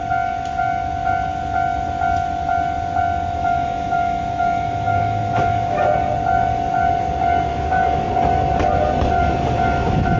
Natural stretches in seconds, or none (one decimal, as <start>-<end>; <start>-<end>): 0.0-3.4; 5.8-7.5; 8.1-10.2